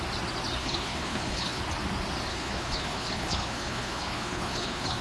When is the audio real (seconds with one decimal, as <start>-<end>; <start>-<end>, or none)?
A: 0.0-0.6; 1.6-2.3